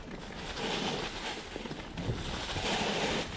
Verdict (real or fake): real